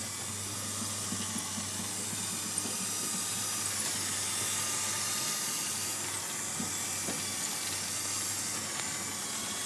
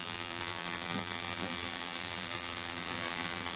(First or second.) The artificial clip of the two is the second